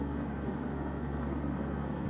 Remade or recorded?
remade